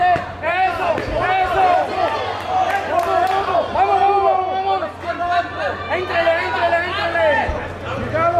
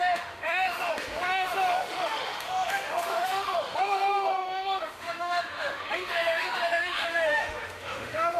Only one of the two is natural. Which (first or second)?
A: first